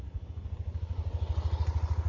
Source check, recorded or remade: recorded